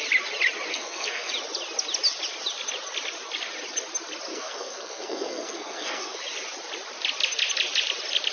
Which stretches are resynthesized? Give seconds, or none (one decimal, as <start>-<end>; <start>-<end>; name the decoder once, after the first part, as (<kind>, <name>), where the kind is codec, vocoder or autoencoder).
0.7-1.3 (codec, SNAC); 4.3-6.2

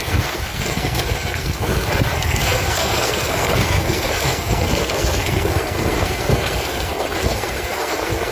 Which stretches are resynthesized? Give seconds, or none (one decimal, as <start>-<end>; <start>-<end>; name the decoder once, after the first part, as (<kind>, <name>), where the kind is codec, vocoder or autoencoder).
0.0-8.3 (codec, SNAC)

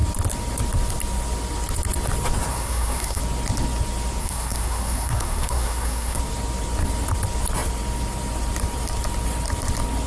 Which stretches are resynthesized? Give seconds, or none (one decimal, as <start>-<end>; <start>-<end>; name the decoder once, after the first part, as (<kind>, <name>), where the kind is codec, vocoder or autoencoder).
2.5-3.2 (codec, SNAC); 4.2-6.2

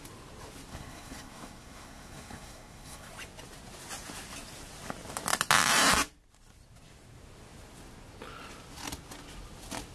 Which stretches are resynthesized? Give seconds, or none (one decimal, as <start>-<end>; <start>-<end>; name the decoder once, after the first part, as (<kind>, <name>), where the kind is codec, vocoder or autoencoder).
0.7-3.1 (codec, SNAC)